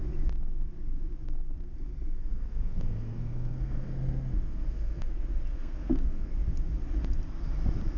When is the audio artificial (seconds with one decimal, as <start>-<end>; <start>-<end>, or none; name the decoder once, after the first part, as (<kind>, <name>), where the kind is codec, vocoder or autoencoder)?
2.3-5.1 (codec, SNAC); 5.5-6.3